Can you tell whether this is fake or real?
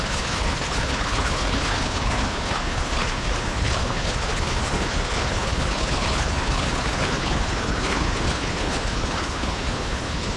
fake